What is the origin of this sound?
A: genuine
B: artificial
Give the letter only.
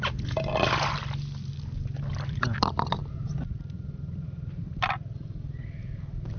A